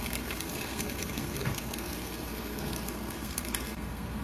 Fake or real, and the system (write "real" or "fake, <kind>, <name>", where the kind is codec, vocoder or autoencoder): fake, codec, SNAC